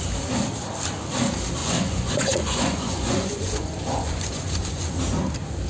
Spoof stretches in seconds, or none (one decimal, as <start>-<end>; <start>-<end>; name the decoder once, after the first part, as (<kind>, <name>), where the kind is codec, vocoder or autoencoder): 1.6-5.0 (vocoder, Vocos)